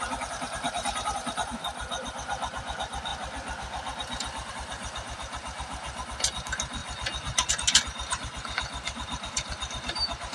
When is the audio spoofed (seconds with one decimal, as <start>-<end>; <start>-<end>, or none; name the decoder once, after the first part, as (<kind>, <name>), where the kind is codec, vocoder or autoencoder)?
none

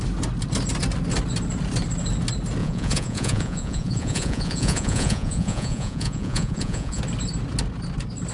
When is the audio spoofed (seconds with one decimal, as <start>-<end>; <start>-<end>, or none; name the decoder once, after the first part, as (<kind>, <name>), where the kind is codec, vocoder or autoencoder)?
2.6-7.0 (vocoder, Vocos)

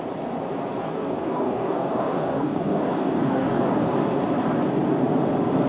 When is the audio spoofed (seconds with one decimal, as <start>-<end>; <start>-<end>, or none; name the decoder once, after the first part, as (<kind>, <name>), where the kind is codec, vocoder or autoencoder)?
0.8-3.9 (codec, DAC)

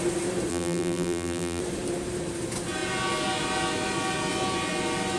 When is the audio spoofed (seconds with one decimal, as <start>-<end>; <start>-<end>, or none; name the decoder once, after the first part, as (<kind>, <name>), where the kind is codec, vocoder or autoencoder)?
0.5-1.6 (vocoder, BigVGAN v2)

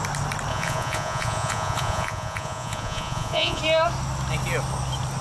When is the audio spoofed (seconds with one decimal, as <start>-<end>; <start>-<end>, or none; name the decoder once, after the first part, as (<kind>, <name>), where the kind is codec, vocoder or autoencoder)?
0.5-3.6 (vocoder, Vocos)

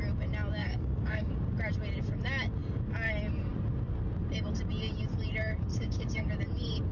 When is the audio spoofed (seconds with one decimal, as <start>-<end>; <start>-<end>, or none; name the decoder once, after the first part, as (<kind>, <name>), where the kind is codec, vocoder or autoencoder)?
0.6-1.3 (codec, DAC); 5.7-6.3

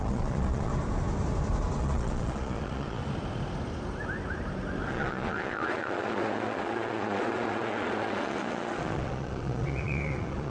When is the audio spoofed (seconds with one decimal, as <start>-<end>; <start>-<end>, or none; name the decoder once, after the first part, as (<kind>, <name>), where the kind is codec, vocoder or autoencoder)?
0.0-0.7 (vocoder, Vocos); 1.8-3.0; 4.9-10.5